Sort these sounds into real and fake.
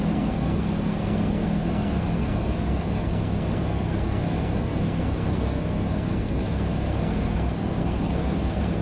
fake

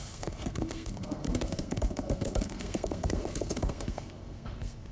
fake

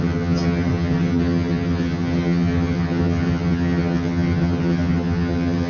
fake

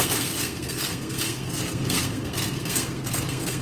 fake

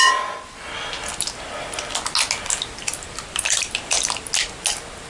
real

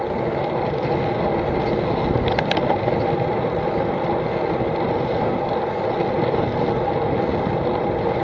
real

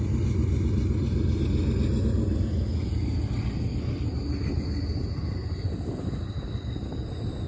real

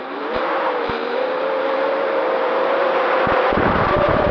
fake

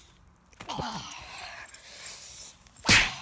real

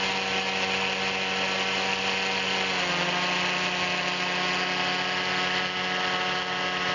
real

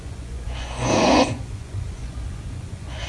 fake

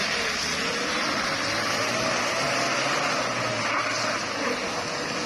real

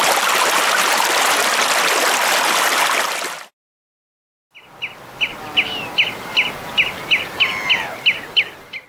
real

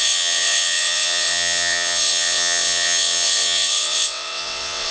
fake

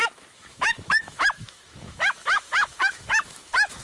fake